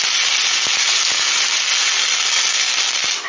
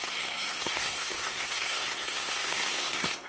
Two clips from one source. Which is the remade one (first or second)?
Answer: second